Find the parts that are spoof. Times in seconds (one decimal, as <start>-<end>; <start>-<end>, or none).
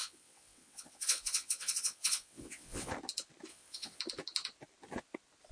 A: 0.0-2.9; 3.5-4.0